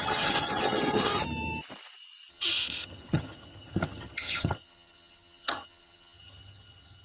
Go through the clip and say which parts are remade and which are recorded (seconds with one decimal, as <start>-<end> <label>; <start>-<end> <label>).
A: 0.0-1.1 remade; 1.1-2.3 recorded; 2.3-7.0 remade